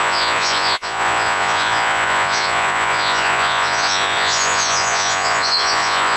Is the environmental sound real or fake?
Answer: fake